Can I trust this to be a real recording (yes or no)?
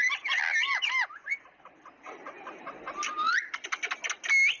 yes